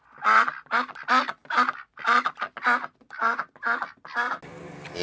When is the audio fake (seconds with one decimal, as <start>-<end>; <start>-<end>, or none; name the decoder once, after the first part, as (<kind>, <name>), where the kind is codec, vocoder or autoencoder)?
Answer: none